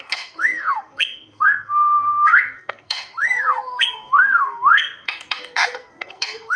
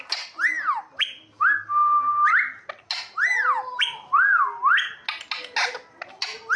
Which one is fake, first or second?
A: first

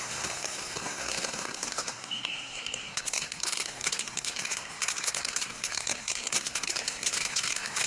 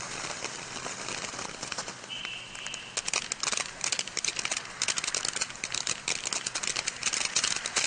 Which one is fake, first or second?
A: first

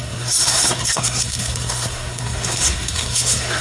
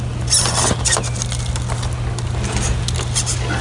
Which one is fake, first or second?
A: first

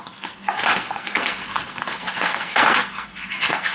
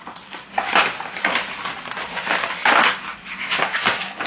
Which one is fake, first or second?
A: first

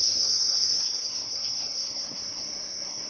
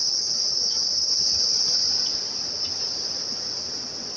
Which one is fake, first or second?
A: first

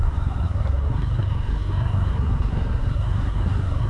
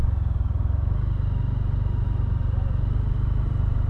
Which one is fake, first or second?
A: first